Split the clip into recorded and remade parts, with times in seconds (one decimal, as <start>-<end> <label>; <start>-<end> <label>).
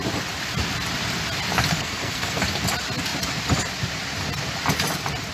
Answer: 0.0-1.8 recorded; 1.8-2.4 remade; 2.4-5.3 recorded